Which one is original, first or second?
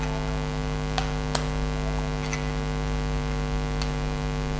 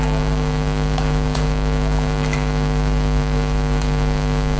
first